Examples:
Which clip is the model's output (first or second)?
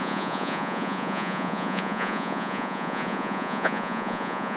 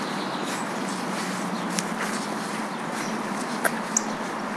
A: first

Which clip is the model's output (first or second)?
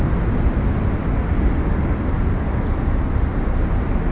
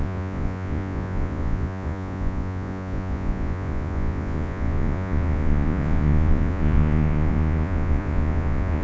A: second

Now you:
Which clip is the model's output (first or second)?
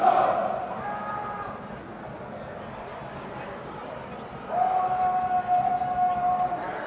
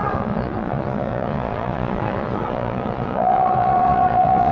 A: second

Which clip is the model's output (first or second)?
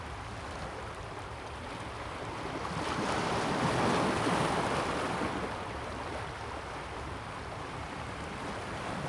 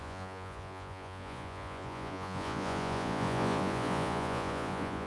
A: second